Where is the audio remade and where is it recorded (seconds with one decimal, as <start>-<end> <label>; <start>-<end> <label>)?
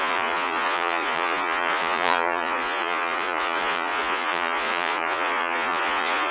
0.0-6.3 remade